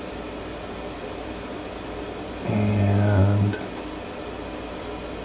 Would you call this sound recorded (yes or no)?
yes